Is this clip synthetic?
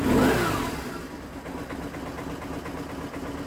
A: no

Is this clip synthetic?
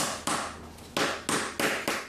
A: no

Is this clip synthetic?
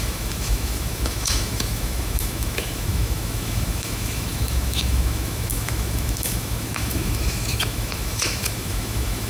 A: yes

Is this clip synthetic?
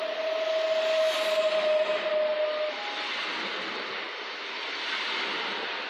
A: no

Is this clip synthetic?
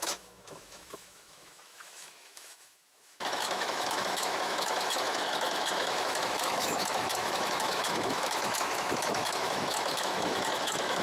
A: yes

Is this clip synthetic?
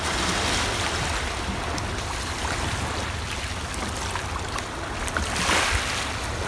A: no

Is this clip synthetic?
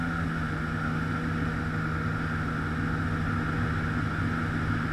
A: no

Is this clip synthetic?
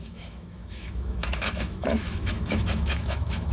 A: yes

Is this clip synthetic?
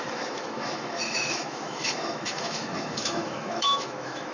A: yes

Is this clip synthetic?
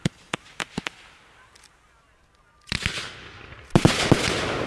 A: no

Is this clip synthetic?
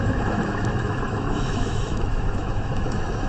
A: yes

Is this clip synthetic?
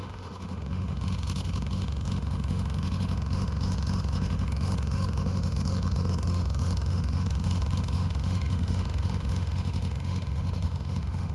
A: yes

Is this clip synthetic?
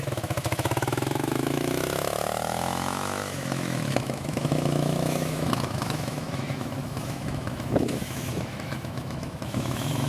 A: yes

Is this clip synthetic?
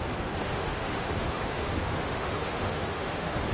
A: yes